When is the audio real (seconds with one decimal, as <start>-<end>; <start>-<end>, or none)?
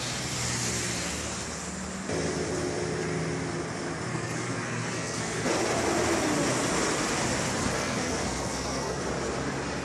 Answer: 0.0-4.1; 5.5-7.6; 9.0-9.8